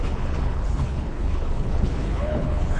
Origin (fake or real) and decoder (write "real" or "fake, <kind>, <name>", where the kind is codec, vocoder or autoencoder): fake, codec, HILCodec